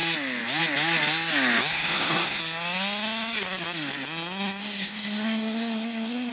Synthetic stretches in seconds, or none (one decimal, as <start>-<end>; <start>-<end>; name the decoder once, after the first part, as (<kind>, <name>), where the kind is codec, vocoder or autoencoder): 1.7-2.4 (codec, SNAC); 4.6-6.3